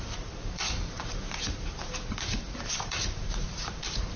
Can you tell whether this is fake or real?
fake